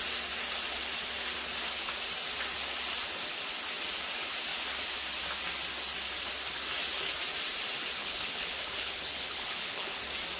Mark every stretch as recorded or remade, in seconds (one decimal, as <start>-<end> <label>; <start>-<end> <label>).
0.0-8.0 recorded; 8.0-10.0 remade; 10.0-10.4 recorded

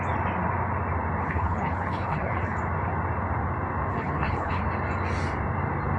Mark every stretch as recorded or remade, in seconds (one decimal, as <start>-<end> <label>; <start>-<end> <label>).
0.0-1.2 recorded; 1.2-2.6 remade; 2.6-3.9 recorded; 3.9-4.6 remade; 4.6-6.0 recorded